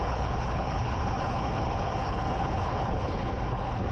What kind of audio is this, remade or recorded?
remade